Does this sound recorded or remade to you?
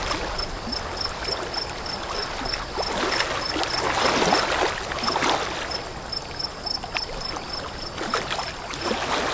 recorded